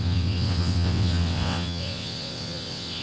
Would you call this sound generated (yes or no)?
yes